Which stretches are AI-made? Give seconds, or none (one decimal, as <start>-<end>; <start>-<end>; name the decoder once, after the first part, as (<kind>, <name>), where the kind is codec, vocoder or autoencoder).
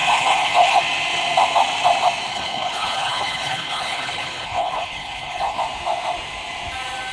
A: 0.0-0.8 (codec, HILCodec); 2.3-5.6